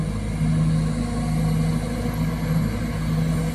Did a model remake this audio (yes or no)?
no